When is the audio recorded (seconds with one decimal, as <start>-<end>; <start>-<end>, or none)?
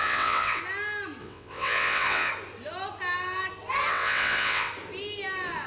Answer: 0.6-1.2; 2.3-3.9; 4.7-5.7